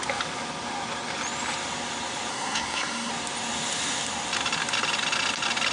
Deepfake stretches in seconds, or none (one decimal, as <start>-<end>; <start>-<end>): 2.3-3.1